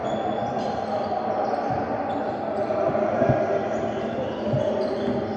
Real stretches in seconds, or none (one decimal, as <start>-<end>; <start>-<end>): 0.0-5.4